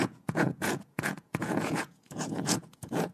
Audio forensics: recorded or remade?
remade